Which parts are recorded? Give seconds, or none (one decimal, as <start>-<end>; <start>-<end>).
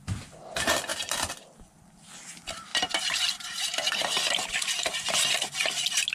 0.0-6.1